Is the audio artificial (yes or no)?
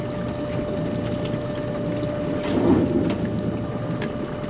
no